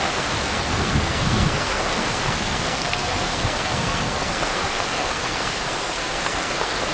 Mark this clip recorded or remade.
remade